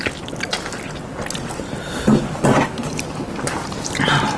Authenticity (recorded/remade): recorded